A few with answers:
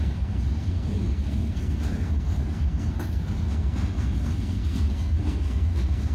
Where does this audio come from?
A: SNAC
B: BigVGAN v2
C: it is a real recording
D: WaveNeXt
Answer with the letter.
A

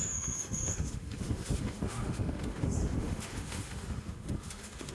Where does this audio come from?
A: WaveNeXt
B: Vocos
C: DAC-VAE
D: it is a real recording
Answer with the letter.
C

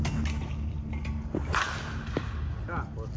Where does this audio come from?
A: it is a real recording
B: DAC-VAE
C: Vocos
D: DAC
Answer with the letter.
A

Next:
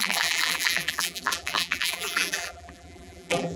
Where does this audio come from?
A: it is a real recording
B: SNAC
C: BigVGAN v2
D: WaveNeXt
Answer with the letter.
C